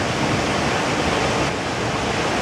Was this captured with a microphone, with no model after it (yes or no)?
yes